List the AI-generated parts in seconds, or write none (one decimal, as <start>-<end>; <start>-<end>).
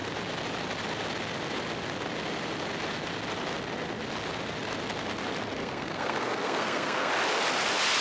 5.6-7.1